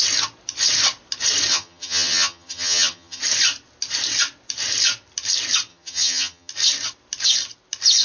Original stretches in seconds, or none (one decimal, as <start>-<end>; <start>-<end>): 0.0-1.5; 3.2-5.7; 6.5-8.0